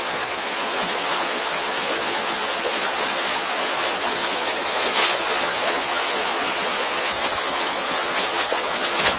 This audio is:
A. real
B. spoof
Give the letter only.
B